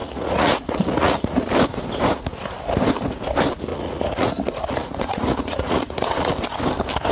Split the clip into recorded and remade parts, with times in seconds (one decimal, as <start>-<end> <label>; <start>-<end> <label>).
0.0-1.5 remade; 1.5-3.7 recorded; 3.7-6.3 remade; 6.3-7.1 recorded